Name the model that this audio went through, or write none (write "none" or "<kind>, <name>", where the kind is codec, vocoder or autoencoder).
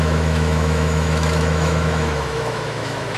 autoencoder, DAC-VAE